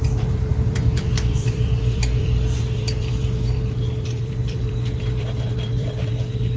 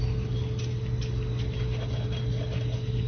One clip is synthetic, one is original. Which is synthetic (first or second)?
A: first